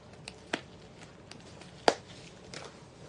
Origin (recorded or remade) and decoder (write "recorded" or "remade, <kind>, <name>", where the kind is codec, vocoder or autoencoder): recorded